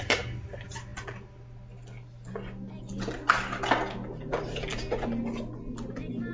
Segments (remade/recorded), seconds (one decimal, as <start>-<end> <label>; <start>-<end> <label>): 0.0-6.3 recorded